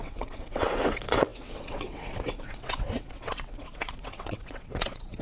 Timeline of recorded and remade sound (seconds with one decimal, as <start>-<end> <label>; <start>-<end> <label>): 0.0-5.2 remade

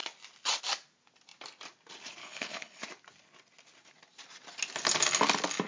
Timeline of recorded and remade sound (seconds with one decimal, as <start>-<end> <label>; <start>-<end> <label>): 0.0-2.2 recorded; 2.2-2.8 remade; 2.8-5.7 recorded